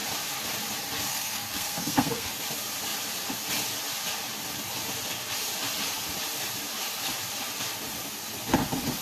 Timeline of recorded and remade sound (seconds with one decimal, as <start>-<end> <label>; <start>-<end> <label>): 0.0-1.1 recorded; 1.1-2.3 remade; 2.3-9.0 recorded